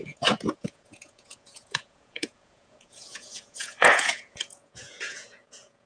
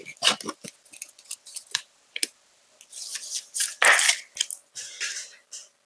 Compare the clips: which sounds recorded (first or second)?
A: second